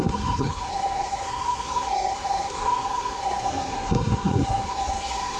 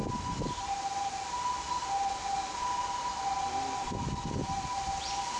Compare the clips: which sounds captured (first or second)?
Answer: second